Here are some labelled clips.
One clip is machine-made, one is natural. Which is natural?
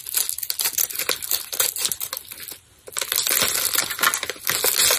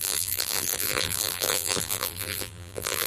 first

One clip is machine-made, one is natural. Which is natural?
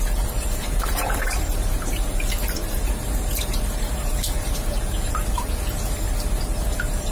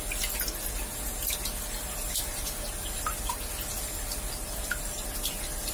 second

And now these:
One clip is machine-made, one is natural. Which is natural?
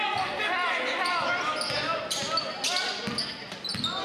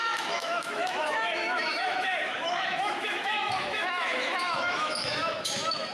first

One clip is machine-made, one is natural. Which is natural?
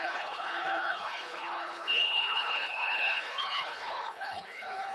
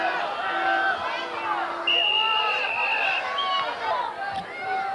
second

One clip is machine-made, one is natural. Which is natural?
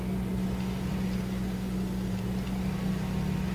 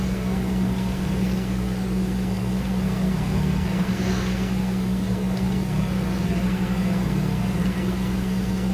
first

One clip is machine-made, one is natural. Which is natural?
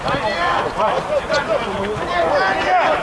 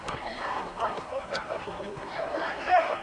first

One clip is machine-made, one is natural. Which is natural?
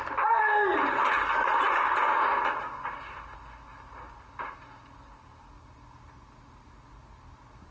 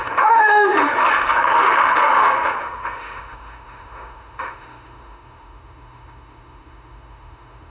first